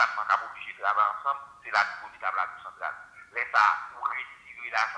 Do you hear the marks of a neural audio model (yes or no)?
no